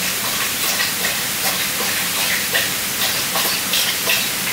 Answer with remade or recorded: recorded